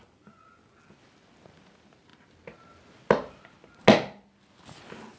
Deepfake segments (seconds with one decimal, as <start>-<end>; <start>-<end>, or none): none